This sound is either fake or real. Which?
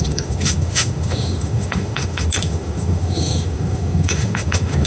fake